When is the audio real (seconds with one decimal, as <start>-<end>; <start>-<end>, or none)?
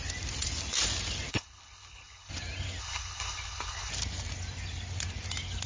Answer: 0.0-1.3; 2.3-2.8; 3.9-5.7